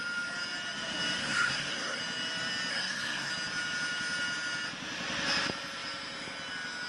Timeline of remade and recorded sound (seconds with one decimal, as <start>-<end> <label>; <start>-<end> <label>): 0.0-1.2 recorded; 1.2-2.0 remade; 2.0-2.7 recorded; 2.7-3.3 remade; 3.3-6.9 recorded